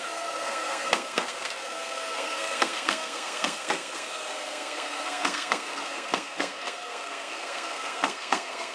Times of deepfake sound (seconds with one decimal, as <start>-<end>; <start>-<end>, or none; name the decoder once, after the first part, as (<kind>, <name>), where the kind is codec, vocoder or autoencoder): 0.0-8.7 (codec, SNAC)